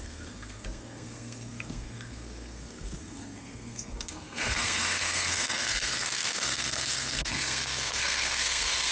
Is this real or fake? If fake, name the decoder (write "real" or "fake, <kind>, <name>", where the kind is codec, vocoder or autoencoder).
fake, codec, SNAC